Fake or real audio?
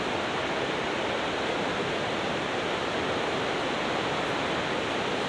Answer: real